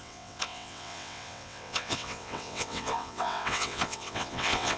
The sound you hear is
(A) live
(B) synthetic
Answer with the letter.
B